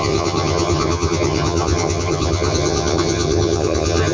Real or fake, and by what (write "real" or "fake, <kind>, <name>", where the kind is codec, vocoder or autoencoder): fake, vocoder, HiFi-GAN